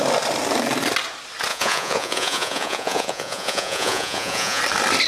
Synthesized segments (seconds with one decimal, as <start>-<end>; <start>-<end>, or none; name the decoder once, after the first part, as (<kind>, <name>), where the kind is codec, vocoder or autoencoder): 1.5-4.6 (vocoder, Vocos)